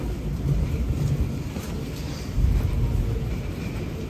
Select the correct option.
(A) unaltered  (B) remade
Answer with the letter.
A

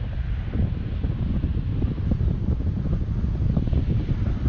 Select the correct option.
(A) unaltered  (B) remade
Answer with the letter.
A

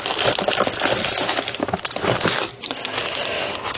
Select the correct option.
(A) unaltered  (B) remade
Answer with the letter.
A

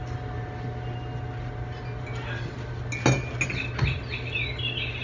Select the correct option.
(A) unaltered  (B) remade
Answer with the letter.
A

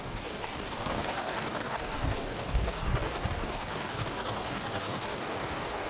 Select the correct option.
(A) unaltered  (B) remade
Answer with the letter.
B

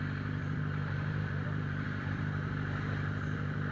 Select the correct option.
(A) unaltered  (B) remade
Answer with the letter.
A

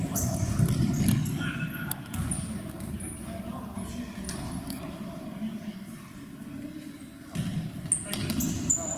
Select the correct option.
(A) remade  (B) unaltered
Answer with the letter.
B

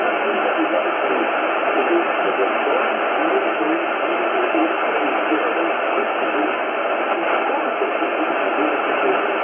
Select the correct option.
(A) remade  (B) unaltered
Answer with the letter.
B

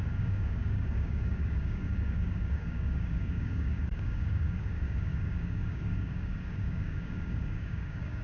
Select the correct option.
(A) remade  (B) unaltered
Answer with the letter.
A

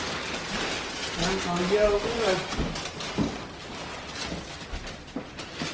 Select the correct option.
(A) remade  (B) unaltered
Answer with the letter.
B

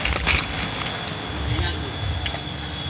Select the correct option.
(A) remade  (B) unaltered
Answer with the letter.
B